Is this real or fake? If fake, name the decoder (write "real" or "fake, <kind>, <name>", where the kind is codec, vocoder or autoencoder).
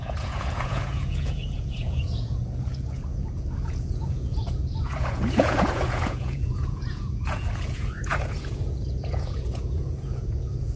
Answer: fake, vocoder, Vocos